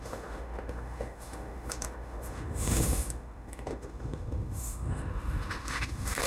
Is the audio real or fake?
fake